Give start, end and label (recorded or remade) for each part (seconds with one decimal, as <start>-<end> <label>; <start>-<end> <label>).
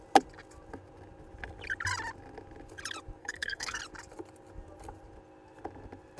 0.0-3.2 recorded; 3.2-3.8 remade; 3.8-6.2 recorded